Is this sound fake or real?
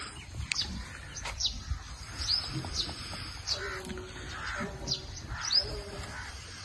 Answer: real